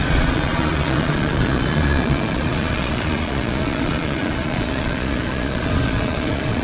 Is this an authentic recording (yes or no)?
no